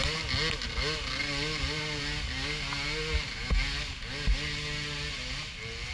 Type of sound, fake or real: real